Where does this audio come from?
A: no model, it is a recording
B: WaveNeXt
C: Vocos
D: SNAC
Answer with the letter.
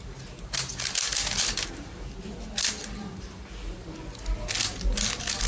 A